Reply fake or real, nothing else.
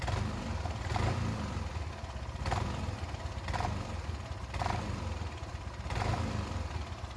real